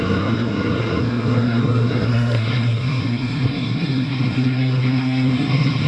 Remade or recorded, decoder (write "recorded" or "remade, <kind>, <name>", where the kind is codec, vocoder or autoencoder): remade, codec, SNAC